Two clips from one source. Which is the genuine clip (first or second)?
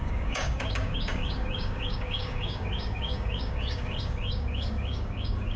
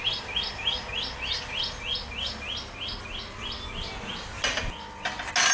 second